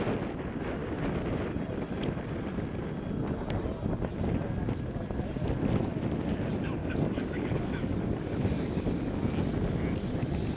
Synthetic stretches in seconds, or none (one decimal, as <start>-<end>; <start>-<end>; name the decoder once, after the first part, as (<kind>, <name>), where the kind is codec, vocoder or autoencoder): 6.8-8.9 (codec, DAC)